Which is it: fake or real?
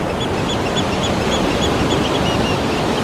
real